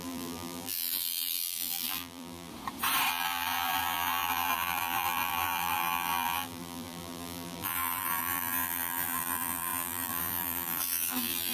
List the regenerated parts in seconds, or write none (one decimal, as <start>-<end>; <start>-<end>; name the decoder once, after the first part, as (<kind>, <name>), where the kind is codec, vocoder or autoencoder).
0.0-2.5 (vocoder, BigVGAN v2); 3.1-11.5